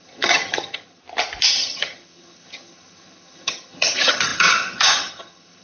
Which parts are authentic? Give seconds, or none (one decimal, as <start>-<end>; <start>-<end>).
1.0-1.5